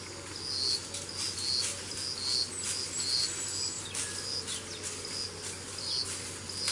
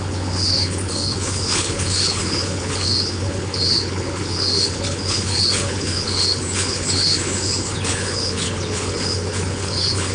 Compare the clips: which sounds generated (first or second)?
second